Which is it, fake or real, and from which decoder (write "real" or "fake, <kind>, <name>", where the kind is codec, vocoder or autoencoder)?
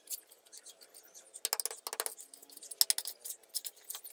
real